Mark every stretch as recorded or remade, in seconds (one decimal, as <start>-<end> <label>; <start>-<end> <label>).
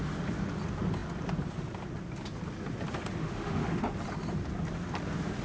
0.0-3.2 recorded; 3.2-3.8 remade; 3.8-5.4 recorded